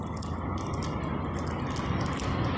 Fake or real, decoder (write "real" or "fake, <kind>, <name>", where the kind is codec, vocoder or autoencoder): real